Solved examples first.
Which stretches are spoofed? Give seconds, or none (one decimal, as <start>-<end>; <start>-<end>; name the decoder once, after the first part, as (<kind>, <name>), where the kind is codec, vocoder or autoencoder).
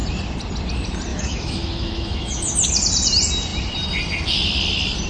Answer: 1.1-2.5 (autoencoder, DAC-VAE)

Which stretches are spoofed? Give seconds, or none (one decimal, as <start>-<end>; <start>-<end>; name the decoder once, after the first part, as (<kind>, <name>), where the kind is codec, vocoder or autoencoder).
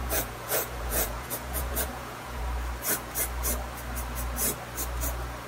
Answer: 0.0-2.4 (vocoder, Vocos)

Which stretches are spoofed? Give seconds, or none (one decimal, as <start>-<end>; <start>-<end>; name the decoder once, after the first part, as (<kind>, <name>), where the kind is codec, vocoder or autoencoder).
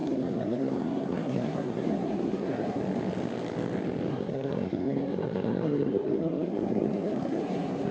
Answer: 0.0-2.8 (codec, SNAC); 4.1-7.9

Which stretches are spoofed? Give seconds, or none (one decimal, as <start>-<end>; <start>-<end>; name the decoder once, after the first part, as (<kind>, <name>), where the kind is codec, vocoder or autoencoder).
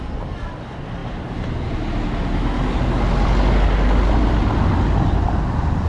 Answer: none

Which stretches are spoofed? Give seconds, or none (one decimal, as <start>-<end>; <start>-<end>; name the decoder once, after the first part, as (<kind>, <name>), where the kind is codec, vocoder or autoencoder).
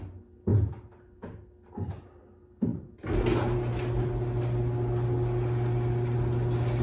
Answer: none